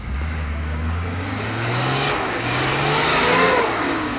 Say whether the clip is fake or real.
fake